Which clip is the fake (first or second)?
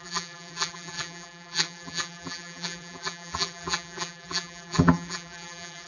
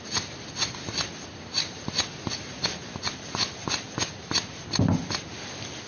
first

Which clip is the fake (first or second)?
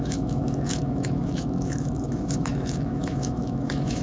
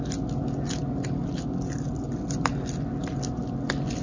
first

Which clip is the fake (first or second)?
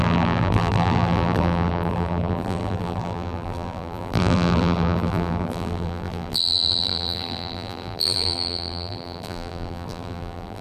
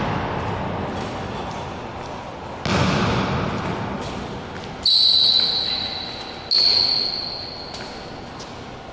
first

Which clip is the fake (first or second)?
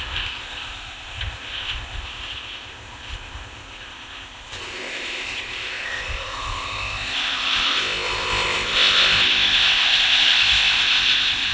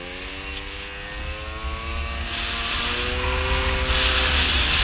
first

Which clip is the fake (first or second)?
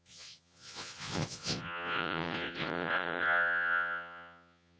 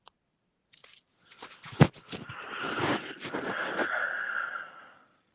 first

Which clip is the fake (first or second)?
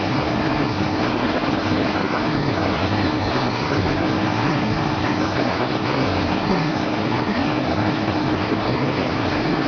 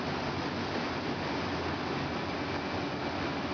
first